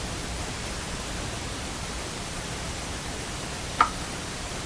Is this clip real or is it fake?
fake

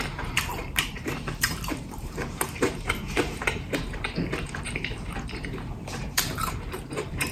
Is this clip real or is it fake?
fake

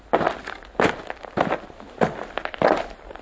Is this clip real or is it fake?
real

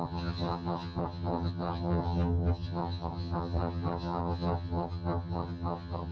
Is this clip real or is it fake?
fake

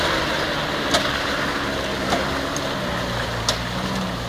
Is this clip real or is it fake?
real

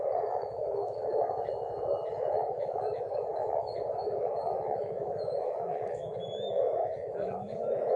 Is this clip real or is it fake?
fake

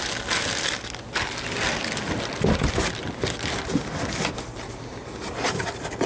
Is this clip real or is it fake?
real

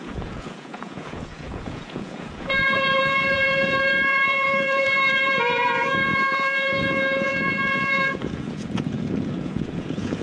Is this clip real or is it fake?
fake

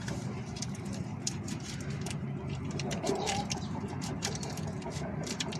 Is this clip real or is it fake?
fake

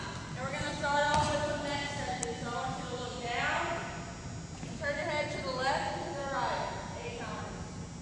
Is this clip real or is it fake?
real